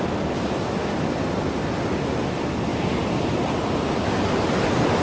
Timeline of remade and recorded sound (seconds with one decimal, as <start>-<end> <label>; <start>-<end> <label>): 0.0-2.7 recorded; 2.7-4.1 remade; 4.1-5.0 recorded